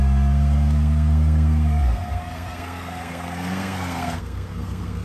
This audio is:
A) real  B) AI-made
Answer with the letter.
B